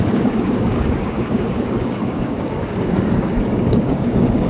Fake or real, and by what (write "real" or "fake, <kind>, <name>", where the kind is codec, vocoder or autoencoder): fake, codec, DAC